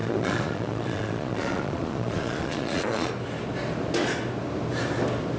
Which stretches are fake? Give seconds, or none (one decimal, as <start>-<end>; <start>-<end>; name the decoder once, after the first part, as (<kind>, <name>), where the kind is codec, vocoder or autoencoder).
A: 0.0-3.1 (vocoder, Vocos)